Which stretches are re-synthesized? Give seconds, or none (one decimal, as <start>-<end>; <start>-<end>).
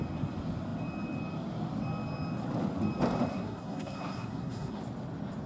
3.3-4.8